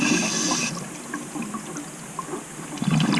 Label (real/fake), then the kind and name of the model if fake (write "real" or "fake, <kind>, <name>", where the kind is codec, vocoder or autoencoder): real